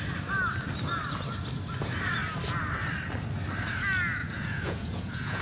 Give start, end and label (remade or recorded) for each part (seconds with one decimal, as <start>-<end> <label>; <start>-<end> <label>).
0.0-4.2 recorded; 4.2-5.4 remade